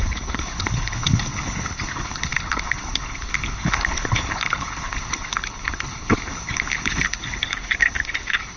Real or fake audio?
fake